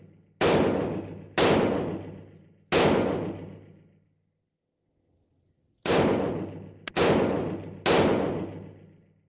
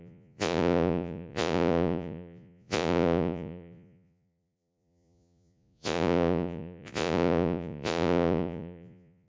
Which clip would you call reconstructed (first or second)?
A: second